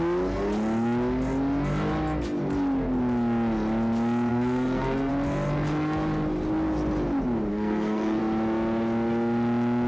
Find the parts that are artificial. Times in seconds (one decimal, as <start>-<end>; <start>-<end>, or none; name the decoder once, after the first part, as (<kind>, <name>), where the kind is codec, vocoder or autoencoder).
4.3-5.1 (codec, SNAC); 7.5-8.2